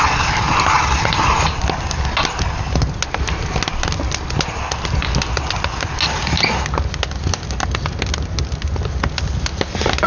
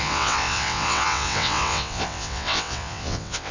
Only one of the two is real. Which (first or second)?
first